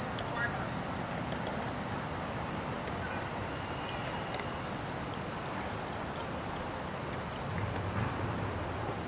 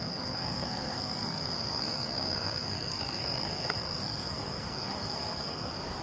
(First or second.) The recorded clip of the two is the first